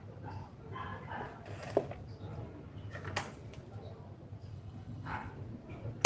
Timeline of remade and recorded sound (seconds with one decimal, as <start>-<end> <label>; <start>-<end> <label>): 0.0-4.5 recorded; 4.5-5.3 remade; 5.3-6.1 recorded